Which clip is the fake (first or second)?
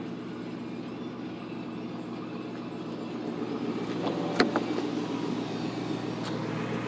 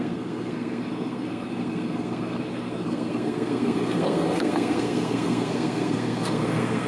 second